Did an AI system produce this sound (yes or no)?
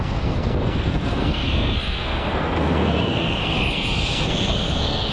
yes